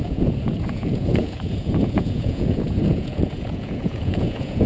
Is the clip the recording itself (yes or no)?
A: no